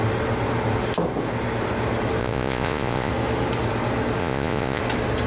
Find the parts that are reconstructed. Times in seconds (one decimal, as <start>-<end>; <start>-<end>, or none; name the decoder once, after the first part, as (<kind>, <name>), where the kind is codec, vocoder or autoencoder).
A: 2.2-3.1 (vocoder, Vocos); 4.2-4.8